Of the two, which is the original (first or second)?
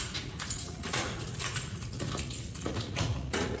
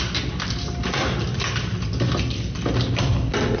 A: second